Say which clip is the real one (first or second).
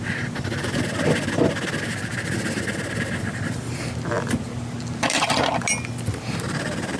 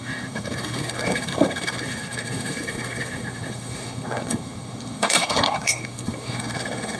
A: first